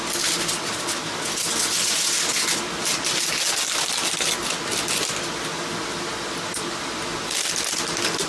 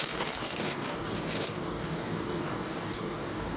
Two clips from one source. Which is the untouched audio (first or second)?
first